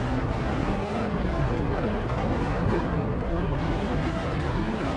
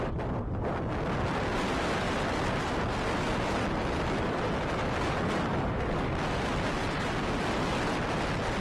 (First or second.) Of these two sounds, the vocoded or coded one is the first